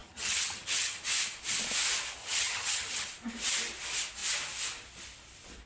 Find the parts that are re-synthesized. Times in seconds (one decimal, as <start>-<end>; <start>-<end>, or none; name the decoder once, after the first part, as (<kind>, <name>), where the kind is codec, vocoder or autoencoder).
0.0-1.0 (vocoder, HiFi-GAN); 2.2-3.1